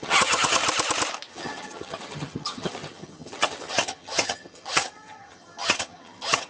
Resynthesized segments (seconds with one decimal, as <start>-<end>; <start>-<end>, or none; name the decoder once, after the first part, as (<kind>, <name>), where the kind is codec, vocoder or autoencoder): 0.0-0.6 (vocoder, HiFi-GAN); 1.3-6.5